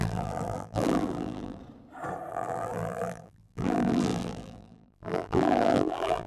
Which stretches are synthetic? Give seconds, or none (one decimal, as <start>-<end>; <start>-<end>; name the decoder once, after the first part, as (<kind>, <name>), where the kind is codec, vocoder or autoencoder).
0.0-1.6 (vocoder, BigVGAN v2); 2.3-6.3